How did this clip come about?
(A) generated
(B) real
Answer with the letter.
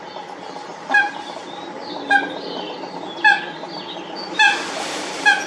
B